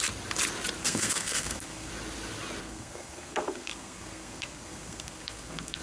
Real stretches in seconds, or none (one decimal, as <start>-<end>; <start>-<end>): 0.0-0.8; 1.9-2.6